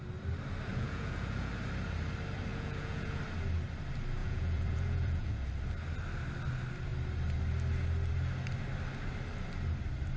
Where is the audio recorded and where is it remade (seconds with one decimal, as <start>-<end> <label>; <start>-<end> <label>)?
0.0-0.7 recorded; 0.7-1.5 remade; 1.5-2.5 recorded; 2.5-3.2 remade; 3.2-4.2 recorded; 4.2-5.5 remade; 5.5-10.2 recorded